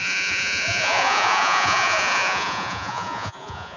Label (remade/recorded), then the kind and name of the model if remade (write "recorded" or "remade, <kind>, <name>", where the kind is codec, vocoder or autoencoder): remade, vocoder, Vocos